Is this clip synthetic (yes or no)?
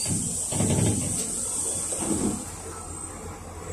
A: no